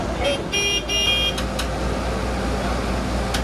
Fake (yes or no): no